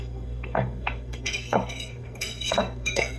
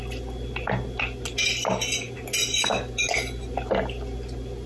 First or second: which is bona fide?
second